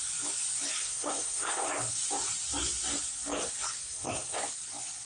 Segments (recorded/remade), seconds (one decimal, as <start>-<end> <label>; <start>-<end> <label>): 0.0-0.8 recorded; 0.8-1.7 remade; 1.7-3.8 recorded; 3.8-4.4 remade; 4.4-5.0 recorded